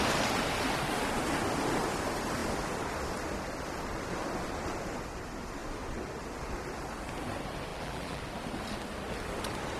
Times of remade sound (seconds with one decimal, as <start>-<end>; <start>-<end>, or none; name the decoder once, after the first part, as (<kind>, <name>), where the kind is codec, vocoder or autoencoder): 7.7-8.2 (vocoder, BigVGAN v2)